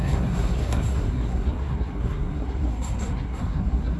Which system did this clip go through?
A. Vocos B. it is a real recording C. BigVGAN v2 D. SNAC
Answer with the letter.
D